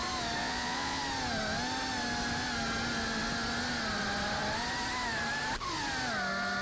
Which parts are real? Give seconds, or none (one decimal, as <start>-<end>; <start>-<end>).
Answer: 0.0-0.4; 1.0-6.6